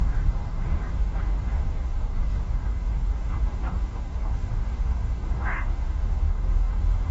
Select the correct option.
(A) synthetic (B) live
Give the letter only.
A